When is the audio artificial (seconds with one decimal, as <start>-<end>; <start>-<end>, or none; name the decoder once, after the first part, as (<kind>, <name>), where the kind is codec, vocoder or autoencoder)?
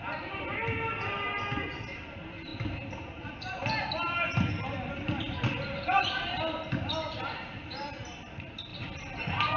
none